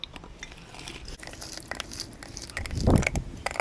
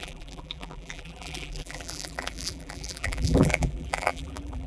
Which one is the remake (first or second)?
second